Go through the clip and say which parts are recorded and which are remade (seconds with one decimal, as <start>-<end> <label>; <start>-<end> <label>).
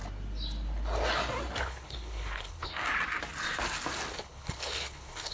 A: 0.0-1.6 recorded; 1.6-2.8 remade; 2.8-4.1 recorded; 4.1-5.3 remade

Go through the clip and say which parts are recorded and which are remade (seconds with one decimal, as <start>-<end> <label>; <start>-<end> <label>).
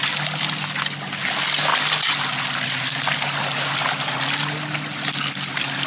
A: 0.0-5.9 recorded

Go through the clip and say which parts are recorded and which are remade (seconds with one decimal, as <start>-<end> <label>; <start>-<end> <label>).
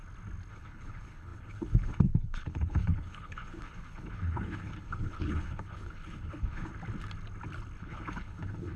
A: 0.0-0.5 recorded; 0.5-6.7 remade; 6.7-7.8 recorded; 7.8-8.8 remade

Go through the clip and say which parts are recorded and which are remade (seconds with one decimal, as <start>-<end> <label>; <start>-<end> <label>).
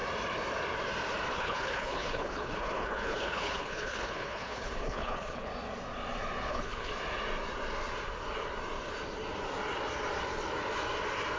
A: 0.0-1.3 recorded; 1.3-5.5 remade; 5.5-6.5 recorded; 6.5-6.9 remade; 6.9-11.4 recorded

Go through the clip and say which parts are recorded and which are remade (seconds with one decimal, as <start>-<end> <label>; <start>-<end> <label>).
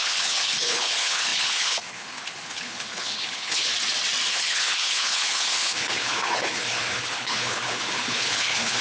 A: 0.0-3.7 remade; 3.7-4.3 recorded; 4.3-8.8 remade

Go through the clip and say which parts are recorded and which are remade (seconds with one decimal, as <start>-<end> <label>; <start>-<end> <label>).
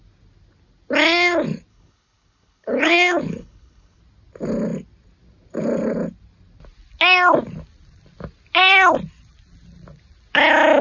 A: 0.0-1.7 recorded; 1.7-4.0 remade; 4.0-10.8 recorded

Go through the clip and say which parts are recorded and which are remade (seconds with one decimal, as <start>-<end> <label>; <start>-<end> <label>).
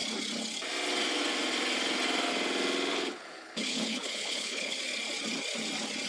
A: 0.0-2.9 recorded; 2.9-4.8 remade; 4.8-6.1 recorded